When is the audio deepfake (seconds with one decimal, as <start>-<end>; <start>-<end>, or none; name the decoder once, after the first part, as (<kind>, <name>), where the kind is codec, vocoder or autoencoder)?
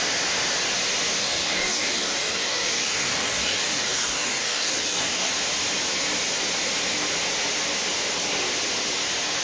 1.2-5.3 (codec, DAC)